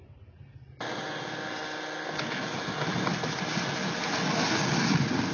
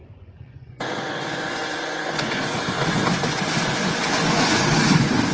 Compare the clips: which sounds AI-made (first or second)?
second